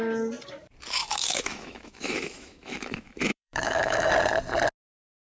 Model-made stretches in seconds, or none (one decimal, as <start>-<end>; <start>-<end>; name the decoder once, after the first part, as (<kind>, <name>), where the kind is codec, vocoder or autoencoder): 1.0-4.1 (autoencoder, DAC-VAE)